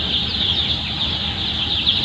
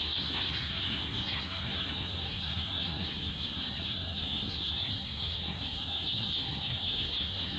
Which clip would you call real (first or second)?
first